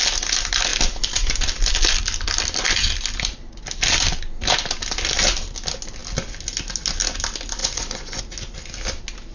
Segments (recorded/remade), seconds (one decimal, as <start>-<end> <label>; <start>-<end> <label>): 0.0-7.6 recorded; 7.6-8.2 remade; 8.2-9.3 recorded